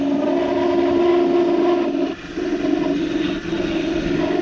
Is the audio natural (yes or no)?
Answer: yes